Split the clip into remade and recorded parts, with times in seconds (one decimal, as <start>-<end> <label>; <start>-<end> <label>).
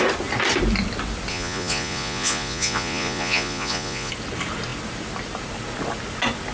0.0-1.3 recorded; 1.3-4.1 remade; 4.1-6.5 recorded